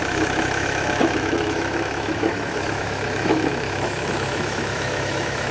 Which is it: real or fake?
fake